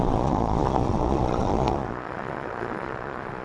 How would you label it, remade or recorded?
remade